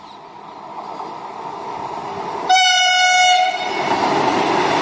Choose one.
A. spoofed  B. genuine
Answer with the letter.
B